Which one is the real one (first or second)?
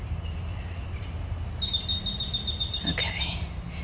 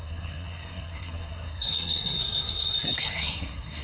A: first